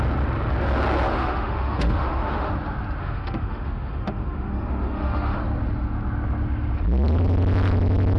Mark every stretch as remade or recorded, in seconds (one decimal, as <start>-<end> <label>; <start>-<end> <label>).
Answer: 0.0-1.1 recorded; 1.1-2.5 remade; 2.5-3.0 recorded; 3.0-5.4 remade; 5.4-8.2 recorded